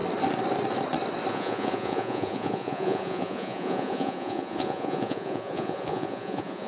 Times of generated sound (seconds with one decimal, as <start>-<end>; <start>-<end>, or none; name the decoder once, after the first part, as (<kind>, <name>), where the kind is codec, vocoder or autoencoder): 1.3-6.7 (vocoder, Vocos)